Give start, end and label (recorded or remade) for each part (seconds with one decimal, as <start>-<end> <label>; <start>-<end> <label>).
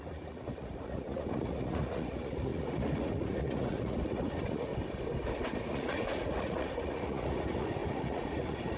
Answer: 0.0-4.7 remade; 4.7-5.7 recorded; 5.7-8.8 remade